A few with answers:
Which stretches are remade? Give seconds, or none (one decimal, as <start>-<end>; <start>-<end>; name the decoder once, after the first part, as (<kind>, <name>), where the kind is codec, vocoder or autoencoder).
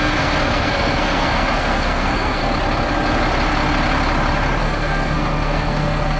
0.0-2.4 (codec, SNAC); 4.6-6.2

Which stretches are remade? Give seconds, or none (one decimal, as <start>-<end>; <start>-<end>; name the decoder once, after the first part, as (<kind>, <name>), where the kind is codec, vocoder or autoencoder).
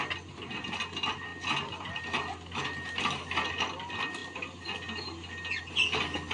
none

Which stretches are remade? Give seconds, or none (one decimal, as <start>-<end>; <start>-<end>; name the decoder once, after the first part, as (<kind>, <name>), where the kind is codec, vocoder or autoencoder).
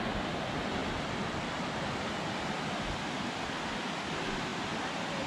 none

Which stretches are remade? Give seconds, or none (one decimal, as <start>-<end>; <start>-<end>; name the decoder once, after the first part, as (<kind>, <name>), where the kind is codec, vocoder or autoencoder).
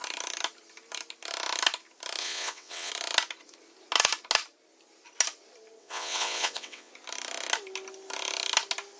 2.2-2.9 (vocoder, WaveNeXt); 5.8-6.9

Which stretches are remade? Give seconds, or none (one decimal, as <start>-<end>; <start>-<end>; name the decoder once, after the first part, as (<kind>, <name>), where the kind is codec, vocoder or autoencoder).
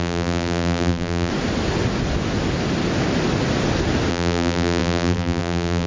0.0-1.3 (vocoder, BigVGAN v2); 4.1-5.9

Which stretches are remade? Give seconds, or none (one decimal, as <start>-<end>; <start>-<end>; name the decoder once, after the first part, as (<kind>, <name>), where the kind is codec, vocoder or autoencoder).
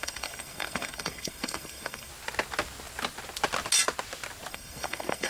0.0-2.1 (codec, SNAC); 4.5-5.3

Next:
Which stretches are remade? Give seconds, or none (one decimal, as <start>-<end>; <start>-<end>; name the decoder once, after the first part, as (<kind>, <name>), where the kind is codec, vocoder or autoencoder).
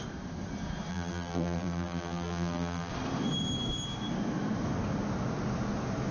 0.9-2.9 (vocoder, BigVGAN v2)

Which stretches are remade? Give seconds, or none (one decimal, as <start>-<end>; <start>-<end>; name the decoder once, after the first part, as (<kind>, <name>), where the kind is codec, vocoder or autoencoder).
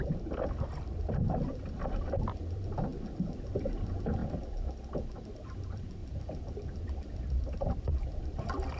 0.0-2.9 (vocoder, BigVGAN v2); 3.5-4.2; 5.3-8.8